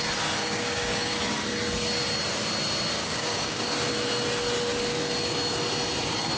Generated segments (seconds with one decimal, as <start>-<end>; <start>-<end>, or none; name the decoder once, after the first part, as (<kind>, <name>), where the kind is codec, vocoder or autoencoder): 0.4-1.1 (codec, DAC); 3.0-3.7